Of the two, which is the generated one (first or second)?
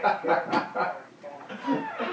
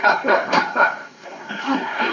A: second